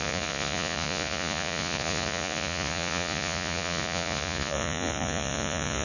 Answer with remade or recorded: remade